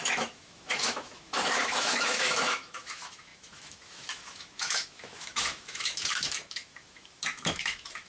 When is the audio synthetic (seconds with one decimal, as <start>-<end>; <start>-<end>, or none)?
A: 0.0-8.1